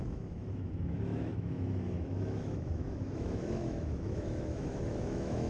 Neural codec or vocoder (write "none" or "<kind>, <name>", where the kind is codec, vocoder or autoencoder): autoencoder, DAC-VAE